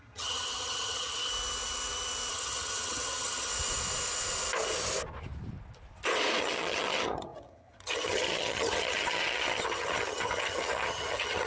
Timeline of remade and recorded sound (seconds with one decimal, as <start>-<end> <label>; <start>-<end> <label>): 0.0-1.3 remade; 1.3-2.3 recorded; 2.3-3.5 remade; 3.5-6.4 recorded; 6.4-11.5 remade